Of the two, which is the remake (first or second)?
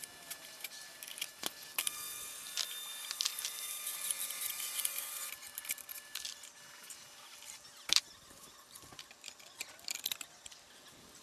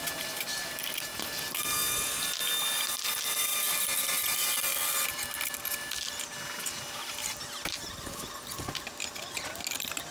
first